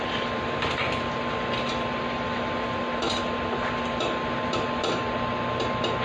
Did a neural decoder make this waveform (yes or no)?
yes